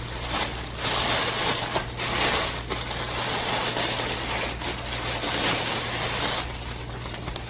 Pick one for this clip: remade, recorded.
recorded